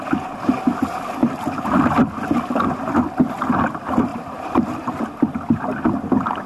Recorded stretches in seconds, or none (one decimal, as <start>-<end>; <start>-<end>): 0.0-4.1; 5.0-6.5